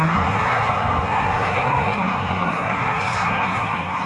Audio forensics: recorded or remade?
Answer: remade